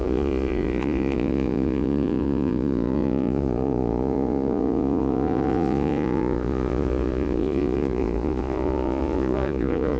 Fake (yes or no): yes